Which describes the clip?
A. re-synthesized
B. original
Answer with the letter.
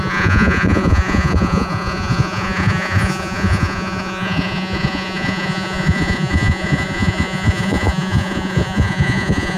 A